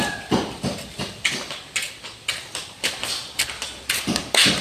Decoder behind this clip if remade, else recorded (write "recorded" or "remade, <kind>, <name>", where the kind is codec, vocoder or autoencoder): recorded